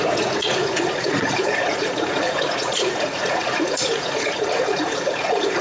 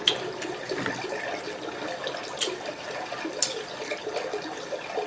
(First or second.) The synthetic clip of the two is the first